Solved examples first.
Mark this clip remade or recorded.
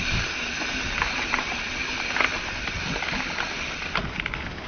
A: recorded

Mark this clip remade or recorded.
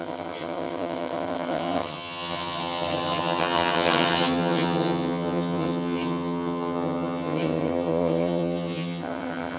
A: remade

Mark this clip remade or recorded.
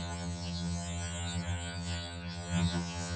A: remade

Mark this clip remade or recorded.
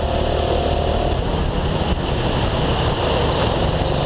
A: recorded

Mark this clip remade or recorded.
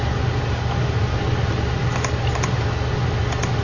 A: recorded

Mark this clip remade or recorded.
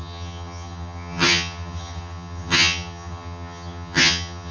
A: remade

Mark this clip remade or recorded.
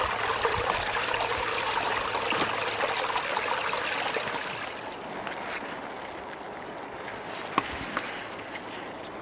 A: recorded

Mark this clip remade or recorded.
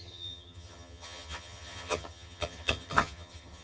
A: remade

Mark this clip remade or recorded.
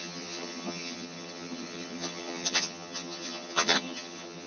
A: remade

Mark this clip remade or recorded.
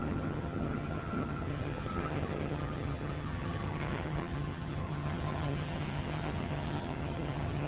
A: remade